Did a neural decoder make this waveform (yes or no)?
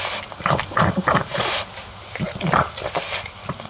no